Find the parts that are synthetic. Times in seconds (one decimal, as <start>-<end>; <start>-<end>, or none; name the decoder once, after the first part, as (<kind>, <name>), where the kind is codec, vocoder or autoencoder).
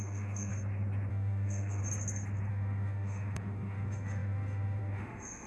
0.0-0.5 (autoencoder, DAC-VAE); 1.1-1.8; 2.5-5.5